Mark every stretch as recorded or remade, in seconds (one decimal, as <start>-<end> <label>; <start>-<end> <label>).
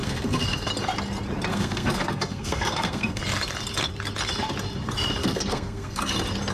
0.0-0.7 remade; 0.7-1.5 recorded; 1.5-3.2 remade; 3.2-5.2 recorded; 5.2-6.1 remade; 6.1-6.5 recorded